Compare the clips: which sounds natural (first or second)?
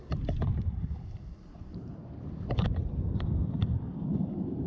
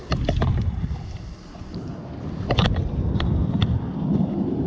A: second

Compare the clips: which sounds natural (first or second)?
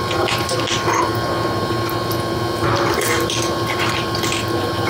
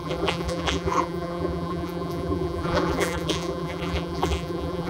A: first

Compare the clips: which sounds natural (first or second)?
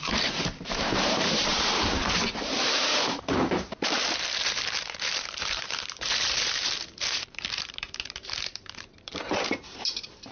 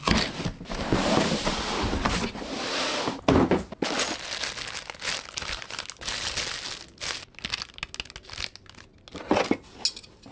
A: second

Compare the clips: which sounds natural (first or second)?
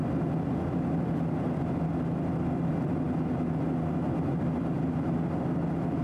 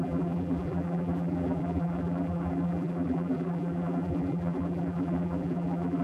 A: first